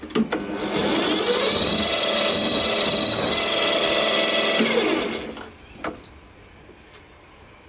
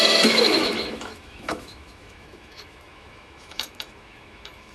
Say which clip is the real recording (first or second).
first